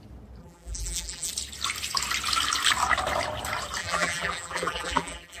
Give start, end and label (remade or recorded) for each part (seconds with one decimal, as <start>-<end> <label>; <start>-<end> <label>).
0.0-0.4 recorded; 0.4-1.3 remade; 1.3-3.8 recorded; 3.8-5.4 remade